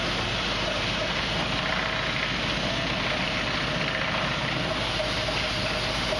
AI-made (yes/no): no